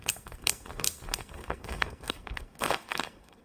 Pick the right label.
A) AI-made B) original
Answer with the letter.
A